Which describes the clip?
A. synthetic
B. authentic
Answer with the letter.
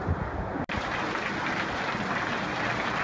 B